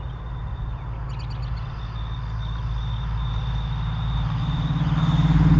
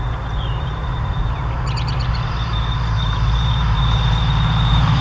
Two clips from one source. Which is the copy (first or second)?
second